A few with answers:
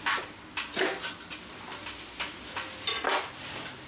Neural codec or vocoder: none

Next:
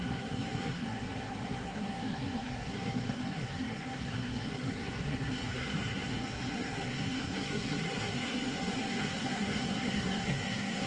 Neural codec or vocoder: codec, SNAC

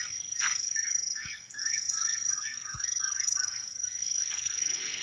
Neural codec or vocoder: codec, SNAC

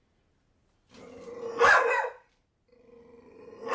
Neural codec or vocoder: none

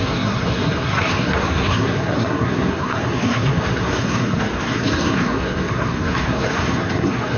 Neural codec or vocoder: codec, SNAC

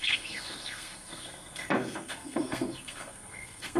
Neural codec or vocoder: codec, SNAC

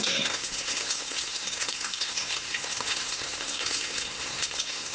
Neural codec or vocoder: codec, SNAC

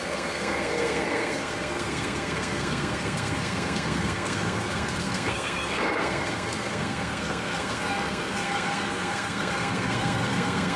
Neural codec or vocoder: codec, SNAC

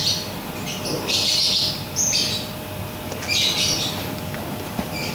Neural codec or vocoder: none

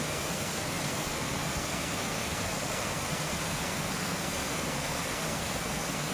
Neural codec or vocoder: codec, SNAC